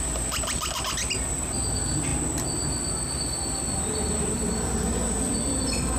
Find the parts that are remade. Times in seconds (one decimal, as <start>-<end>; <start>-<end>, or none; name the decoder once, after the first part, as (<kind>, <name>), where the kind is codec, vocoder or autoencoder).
none